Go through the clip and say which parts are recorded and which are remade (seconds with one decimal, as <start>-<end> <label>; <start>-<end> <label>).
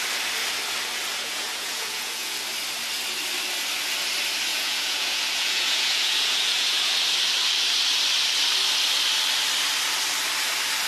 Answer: 0.0-1.1 recorded; 1.1-2.4 remade; 2.4-4.5 recorded; 4.5-6.9 remade; 6.9-10.9 recorded